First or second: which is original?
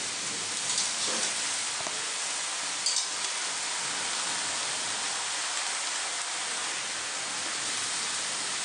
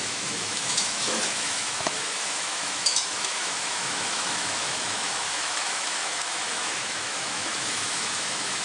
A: first